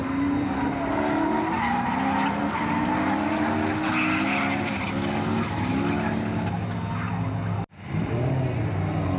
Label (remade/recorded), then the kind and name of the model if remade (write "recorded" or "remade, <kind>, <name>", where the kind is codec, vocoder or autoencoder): recorded